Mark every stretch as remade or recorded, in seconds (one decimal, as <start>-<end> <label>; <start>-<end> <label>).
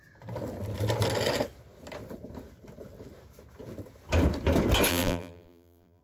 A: 0.0-4.9 recorded; 4.9-6.0 remade